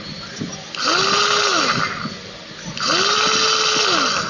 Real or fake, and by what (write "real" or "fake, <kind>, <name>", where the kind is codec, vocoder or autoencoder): real